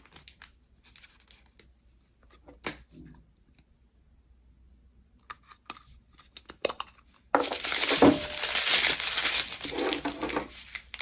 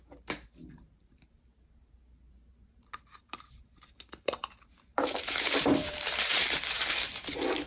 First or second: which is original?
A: first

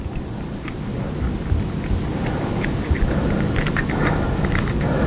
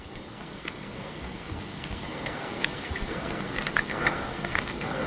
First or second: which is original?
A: first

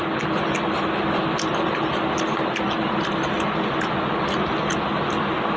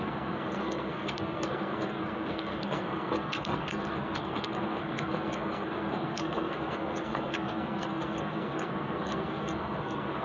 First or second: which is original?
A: first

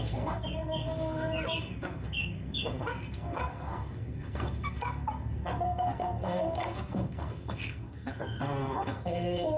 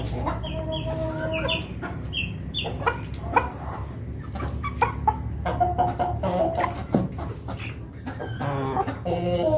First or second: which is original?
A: second